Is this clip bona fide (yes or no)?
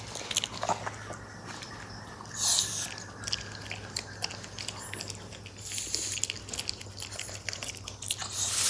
yes